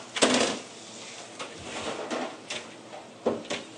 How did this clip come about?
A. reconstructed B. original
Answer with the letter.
B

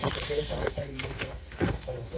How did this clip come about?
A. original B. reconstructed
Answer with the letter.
B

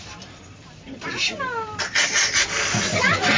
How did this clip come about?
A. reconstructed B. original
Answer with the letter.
B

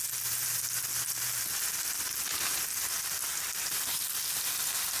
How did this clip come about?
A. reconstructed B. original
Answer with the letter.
B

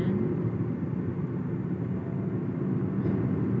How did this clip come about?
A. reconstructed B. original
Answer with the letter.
B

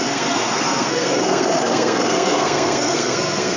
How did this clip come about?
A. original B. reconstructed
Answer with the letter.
B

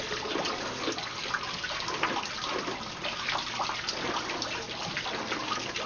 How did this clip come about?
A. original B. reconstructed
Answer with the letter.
A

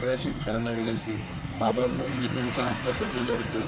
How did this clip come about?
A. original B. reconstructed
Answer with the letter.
B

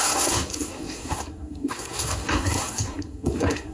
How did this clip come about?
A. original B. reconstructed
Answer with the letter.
B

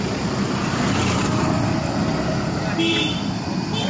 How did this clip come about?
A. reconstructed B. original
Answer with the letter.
B